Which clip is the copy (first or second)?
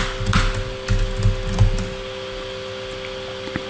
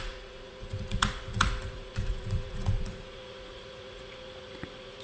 second